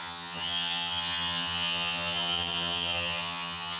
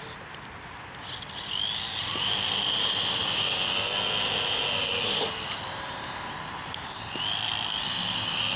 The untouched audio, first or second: second